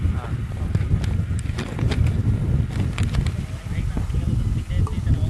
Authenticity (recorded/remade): recorded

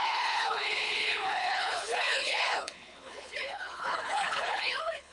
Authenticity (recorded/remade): remade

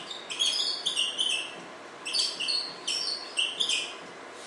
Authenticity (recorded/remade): recorded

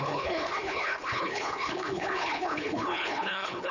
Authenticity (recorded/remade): remade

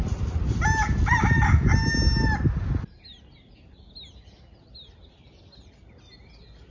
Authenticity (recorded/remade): recorded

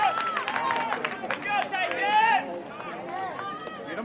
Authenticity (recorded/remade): recorded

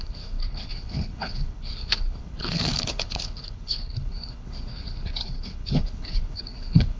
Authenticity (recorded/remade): remade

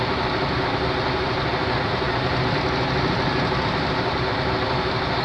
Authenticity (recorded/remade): recorded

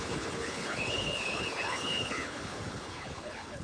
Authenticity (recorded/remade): remade